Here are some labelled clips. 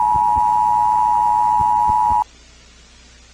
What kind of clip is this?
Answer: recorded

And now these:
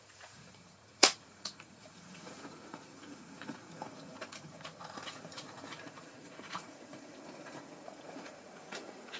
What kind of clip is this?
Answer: remade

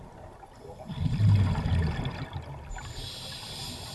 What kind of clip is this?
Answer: recorded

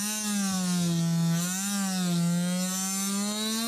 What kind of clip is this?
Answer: recorded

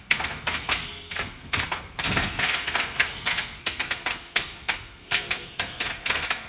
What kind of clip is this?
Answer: remade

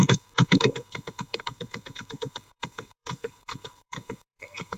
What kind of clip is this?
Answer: remade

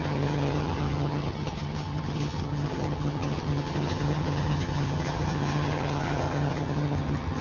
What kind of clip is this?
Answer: remade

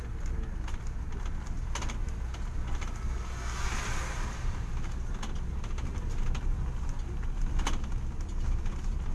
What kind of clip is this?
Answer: recorded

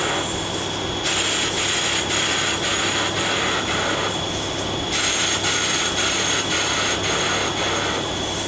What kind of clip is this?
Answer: recorded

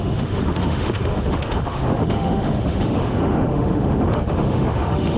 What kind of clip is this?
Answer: remade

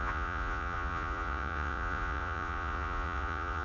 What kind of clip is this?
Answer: remade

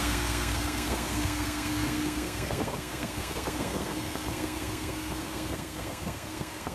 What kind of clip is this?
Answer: remade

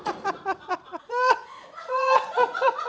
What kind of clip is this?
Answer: remade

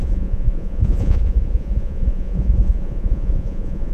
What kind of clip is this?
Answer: remade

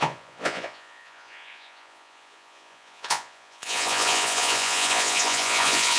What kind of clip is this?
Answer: remade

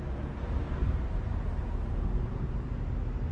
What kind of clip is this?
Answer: remade